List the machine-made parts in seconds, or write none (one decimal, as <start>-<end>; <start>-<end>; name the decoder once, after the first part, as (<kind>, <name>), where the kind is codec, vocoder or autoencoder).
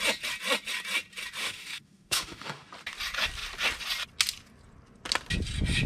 1.4-2.7 (autoencoder, DAC-VAE)